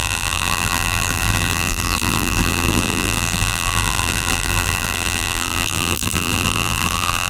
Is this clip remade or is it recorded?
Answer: remade